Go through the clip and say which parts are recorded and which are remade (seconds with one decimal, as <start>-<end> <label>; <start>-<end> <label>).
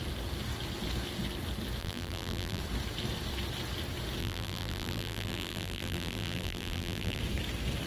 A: 0.0-1.8 recorded; 1.8-2.6 remade; 2.6-4.2 recorded; 4.2-7.2 remade; 7.2-7.9 recorded